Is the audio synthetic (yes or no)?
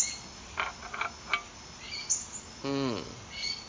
no